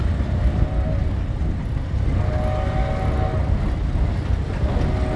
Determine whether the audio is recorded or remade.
recorded